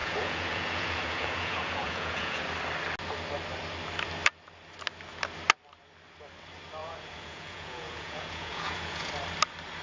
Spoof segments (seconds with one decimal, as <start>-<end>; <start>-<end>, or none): 0.0-2.4; 6.8-9.1